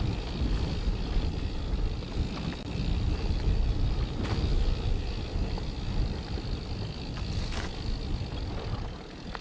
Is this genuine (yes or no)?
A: yes